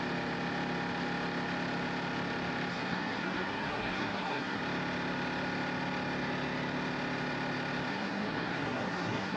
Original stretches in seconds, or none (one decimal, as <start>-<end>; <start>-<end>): 0.0-2.7; 4.6-7.9